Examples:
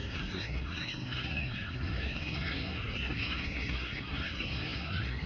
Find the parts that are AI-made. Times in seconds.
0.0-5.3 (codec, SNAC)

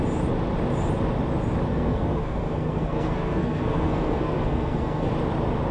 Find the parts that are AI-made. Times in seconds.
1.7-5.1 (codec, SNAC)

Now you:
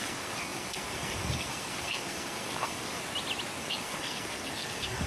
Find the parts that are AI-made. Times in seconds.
0.0-3.0 (codec, SNAC); 3.6-5.1

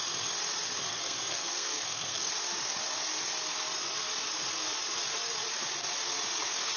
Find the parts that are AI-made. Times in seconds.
0.9-2.3 (codec, SNAC)